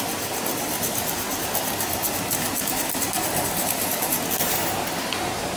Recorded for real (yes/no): yes